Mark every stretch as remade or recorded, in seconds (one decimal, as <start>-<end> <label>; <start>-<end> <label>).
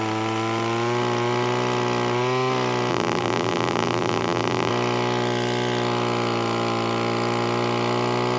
0.0-2.9 recorded; 2.9-4.7 remade; 4.7-8.4 recorded